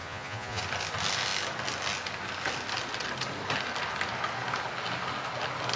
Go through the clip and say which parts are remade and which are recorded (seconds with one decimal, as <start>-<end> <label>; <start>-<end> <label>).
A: 0.0-0.6 remade; 0.6-5.8 recorded